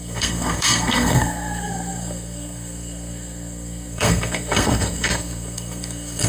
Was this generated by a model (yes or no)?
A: yes